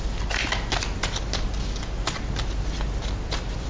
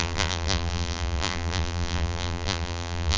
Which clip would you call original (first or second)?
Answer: first